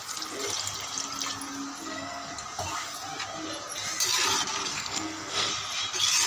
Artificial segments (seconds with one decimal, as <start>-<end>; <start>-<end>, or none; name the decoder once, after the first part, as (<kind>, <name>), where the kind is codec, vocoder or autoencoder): 1.8-2.3 (codec, SNAC); 4.7-5.5